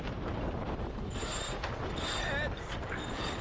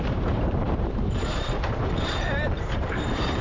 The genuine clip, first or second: first